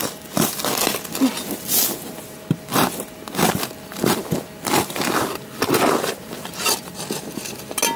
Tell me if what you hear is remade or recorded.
recorded